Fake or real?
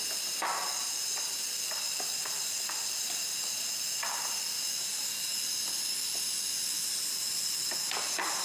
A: real